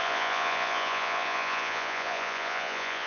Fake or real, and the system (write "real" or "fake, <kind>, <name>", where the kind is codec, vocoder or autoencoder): fake, vocoder, Vocos